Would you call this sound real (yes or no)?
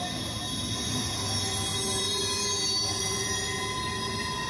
yes